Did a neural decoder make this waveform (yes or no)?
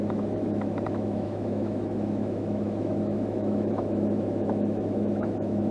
yes